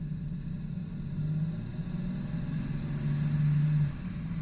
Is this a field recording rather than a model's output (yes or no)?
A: yes